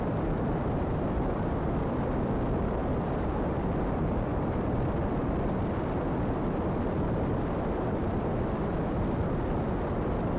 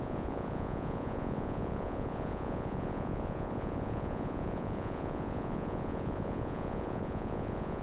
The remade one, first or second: second